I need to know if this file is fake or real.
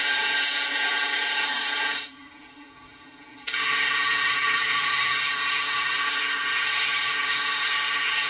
fake